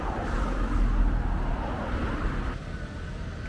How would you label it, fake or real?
real